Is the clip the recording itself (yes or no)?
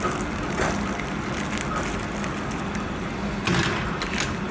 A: yes